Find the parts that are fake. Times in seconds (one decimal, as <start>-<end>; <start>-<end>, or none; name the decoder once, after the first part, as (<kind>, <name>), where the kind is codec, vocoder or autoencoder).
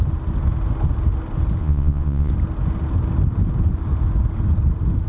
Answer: 1.6-2.3 (vocoder, Vocos)